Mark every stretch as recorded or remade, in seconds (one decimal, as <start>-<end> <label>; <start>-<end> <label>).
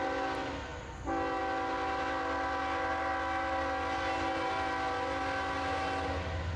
0.0-6.6 recorded